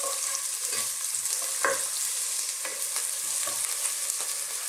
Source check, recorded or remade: recorded